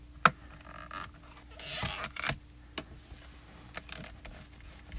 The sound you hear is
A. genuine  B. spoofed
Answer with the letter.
A